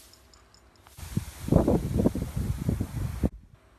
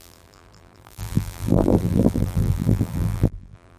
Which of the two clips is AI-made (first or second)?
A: second